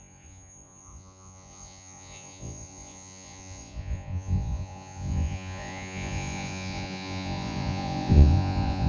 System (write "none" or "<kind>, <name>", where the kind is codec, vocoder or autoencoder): vocoder, Vocos